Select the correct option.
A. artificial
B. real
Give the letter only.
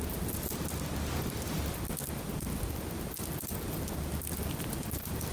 B